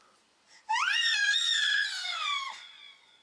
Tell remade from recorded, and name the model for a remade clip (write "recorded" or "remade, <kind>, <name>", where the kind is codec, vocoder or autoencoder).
remade, vocoder, Vocos